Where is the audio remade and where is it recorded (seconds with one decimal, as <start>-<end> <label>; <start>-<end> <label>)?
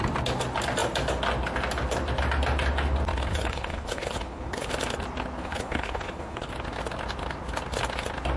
0.0-3.3 recorded; 3.3-4.7 remade; 4.7-5.4 recorded; 5.4-6.5 remade; 6.5-8.4 recorded